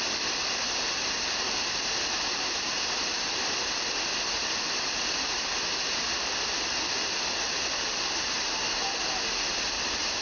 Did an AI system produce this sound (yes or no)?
yes